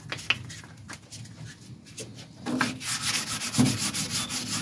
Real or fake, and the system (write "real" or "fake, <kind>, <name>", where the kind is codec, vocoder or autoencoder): real